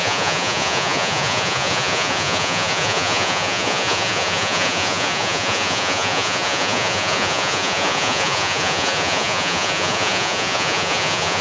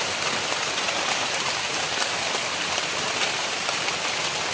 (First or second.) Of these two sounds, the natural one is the second